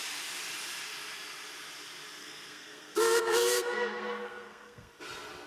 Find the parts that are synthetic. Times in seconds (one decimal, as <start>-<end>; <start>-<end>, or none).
2.2-4.9